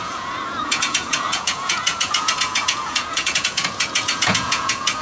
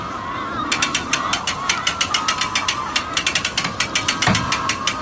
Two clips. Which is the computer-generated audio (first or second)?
first